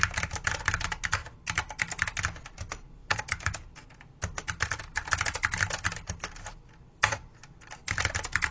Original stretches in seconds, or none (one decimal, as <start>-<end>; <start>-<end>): 0.0-3.0; 3.7-8.5